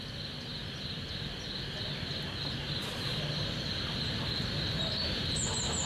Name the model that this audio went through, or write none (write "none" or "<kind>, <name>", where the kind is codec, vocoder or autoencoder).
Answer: none